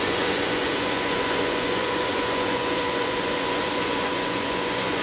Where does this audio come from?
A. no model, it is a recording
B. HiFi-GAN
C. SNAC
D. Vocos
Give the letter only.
D